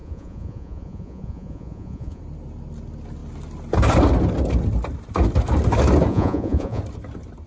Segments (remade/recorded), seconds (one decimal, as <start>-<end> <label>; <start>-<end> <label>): 0.0-2.2 remade; 2.2-6.1 recorded; 6.1-6.8 remade; 6.8-7.5 recorded